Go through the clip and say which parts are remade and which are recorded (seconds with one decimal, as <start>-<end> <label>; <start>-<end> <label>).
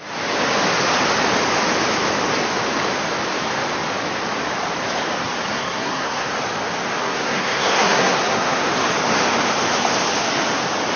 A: 0.0-5.5 recorded; 5.5-6.3 remade; 6.3-7.0 recorded; 7.0-8.7 remade; 8.7-11.0 recorded